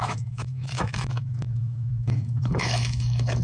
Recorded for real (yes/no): no